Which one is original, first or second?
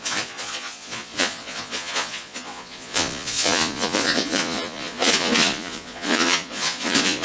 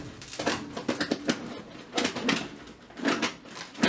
second